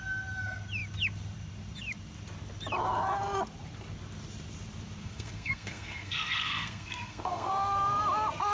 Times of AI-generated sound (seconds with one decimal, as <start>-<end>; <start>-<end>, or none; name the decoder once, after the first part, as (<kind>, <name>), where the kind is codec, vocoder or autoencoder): 5.0-7.5 (codec, SNAC)